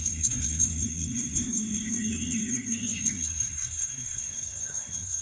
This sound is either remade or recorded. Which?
remade